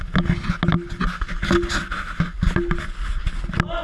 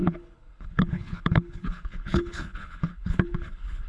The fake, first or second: second